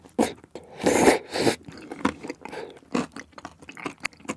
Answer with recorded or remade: recorded